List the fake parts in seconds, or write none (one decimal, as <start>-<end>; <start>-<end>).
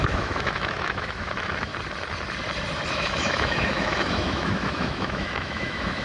0.0-1.7; 2.9-6.0